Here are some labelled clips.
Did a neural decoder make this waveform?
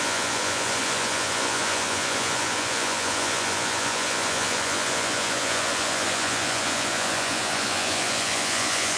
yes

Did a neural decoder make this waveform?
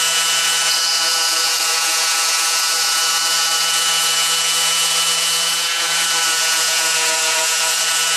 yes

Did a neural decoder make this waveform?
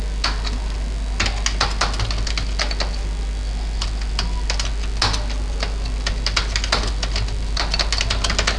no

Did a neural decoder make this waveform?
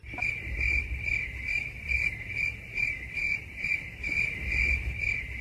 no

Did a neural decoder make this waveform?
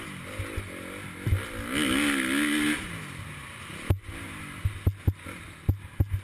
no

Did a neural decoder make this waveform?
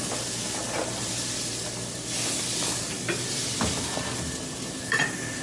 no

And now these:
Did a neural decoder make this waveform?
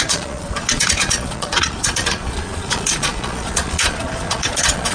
yes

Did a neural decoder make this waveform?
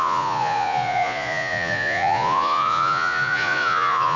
yes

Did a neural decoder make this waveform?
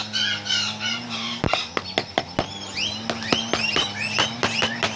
no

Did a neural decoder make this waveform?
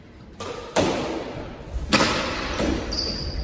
no